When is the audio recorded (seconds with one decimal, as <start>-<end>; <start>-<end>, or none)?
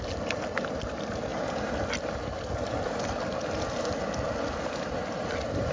0.0-5.7